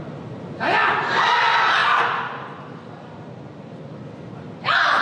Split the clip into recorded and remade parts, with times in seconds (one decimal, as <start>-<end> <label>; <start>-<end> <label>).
0.0-0.8 recorded; 0.8-1.3 remade; 1.3-1.8 recorded; 1.8-3.7 remade; 3.7-5.0 recorded